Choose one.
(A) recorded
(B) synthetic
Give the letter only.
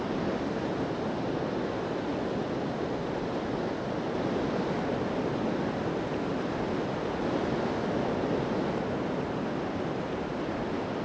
A